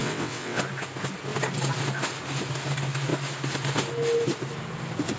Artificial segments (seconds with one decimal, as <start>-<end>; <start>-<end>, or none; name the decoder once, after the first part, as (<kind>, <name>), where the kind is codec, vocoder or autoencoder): 0.0-0.6 (vocoder, WaveNeXt)